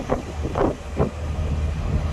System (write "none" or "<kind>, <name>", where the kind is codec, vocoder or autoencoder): none